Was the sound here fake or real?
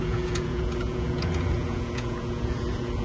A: fake